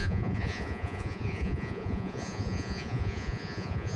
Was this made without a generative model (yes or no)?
no